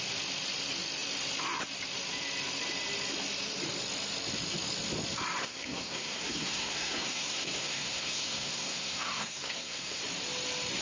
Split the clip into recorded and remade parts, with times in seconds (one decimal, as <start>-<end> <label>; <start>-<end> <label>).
0.0-5.4 recorded; 5.4-10.0 remade; 10.0-10.8 recorded